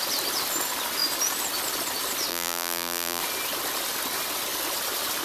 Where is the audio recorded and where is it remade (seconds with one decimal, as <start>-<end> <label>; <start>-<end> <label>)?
0.0-2.3 recorded; 2.3-3.2 remade; 3.2-5.2 recorded